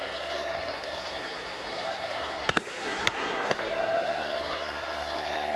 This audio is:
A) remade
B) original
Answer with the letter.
A